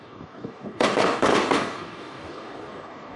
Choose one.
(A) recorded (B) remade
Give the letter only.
B